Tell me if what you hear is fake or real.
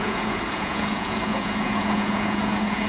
fake